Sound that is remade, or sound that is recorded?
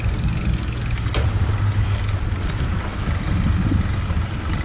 recorded